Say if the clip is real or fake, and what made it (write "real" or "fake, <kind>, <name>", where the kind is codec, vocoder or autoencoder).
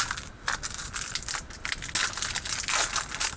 real